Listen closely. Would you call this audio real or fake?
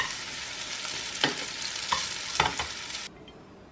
real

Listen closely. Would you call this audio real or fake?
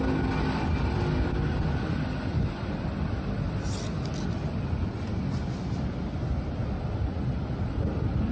real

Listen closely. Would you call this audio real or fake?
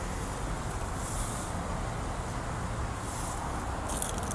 real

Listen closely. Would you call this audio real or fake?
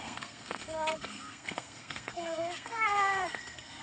fake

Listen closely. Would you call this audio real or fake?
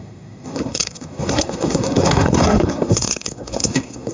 fake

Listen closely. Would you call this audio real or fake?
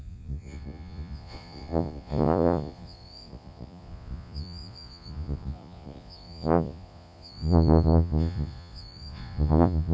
fake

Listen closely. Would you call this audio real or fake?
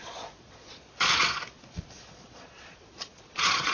fake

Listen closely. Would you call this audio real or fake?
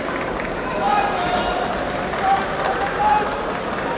real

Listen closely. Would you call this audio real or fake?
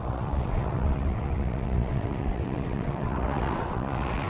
fake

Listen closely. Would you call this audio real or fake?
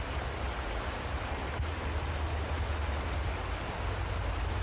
real